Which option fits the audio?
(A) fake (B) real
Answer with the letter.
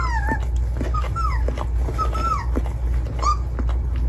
B